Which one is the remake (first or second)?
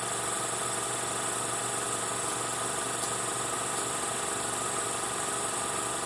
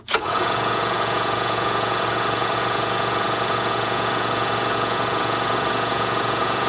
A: second